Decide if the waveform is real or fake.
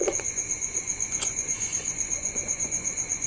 fake